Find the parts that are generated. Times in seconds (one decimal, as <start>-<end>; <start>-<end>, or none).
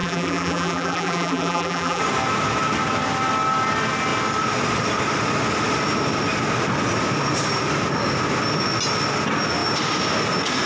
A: 0.0-2.0